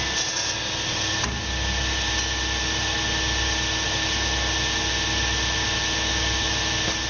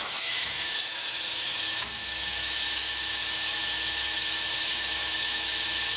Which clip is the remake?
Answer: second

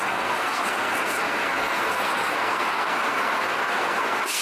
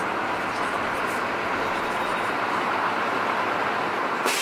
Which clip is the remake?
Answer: first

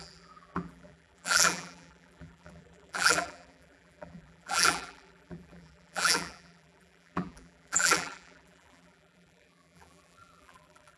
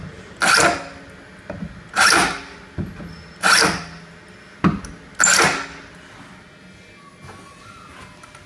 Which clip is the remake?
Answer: first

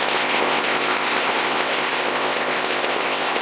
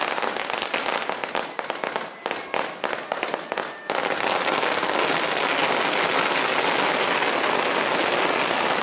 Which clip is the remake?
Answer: first